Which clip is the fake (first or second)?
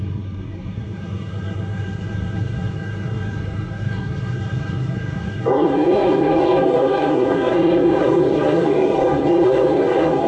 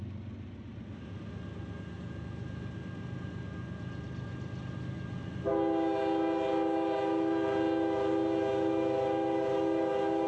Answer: first